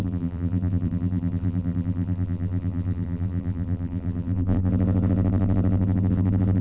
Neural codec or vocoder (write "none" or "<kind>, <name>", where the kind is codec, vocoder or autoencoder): vocoder, BigVGAN v2